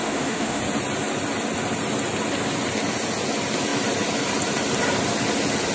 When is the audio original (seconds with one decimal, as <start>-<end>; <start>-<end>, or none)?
0.6-5.7